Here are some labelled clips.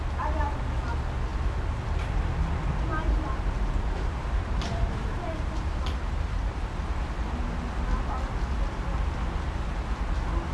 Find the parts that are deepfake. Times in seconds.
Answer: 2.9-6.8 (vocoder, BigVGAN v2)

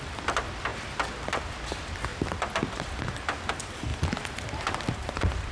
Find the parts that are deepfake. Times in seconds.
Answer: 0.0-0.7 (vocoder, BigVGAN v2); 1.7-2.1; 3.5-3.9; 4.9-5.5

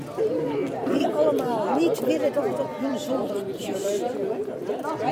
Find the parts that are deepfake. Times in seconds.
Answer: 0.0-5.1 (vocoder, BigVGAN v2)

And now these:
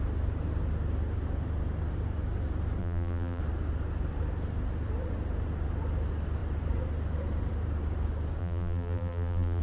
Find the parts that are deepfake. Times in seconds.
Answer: 2.8-3.4 (vocoder, BigVGAN v2); 8.4-9.6

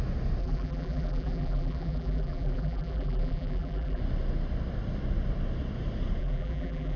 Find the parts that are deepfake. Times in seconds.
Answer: 0.4-4.0 (vocoder, BigVGAN v2); 6.2-7.0

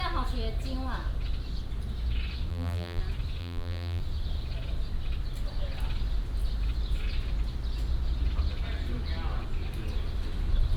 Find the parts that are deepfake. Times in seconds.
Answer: 2.5-3.0 (vocoder, BigVGAN v2); 3.4-4.0

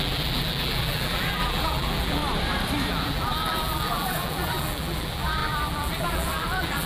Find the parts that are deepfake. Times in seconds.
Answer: 0.0-2.2 (vocoder, BigVGAN v2); 2.9-6.9